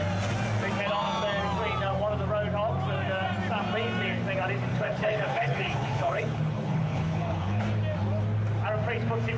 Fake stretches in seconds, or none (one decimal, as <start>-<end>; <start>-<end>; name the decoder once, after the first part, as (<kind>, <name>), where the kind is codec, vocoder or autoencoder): 4.7-7.6 (codec, HILCodec)